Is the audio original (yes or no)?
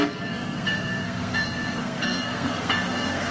no